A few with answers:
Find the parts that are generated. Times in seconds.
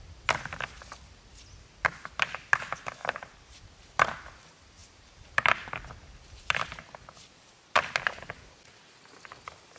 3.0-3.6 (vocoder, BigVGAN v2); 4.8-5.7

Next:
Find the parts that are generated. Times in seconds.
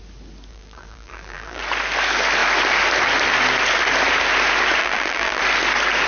0.5-1.6 (vocoder, BigVGAN v2); 4.8-5.4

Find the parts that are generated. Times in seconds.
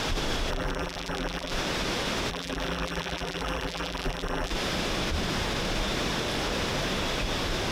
0.5-1.5 (vocoder, BigVGAN v2); 2.3-4.5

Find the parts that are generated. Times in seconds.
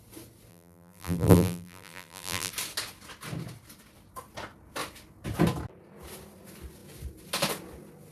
0.5-2.5 (vocoder, BigVGAN v2)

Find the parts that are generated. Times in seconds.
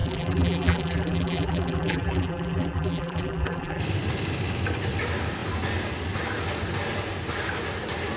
0.0-3.8 (vocoder, BigVGAN v2)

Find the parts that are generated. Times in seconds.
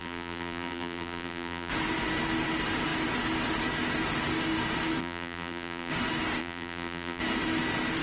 0.0-1.7 (vocoder, BigVGAN v2); 5.0-5.9; 6.4-7.2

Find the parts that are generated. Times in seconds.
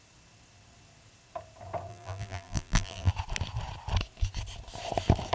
1.9-3.1 (vocoder, BigVGAN v2)